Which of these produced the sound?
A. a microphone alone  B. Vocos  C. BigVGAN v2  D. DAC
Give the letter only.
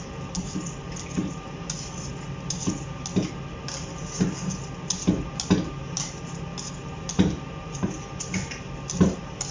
A